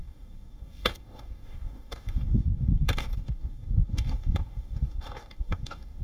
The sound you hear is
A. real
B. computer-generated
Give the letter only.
B